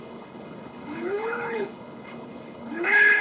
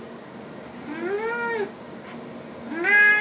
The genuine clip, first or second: second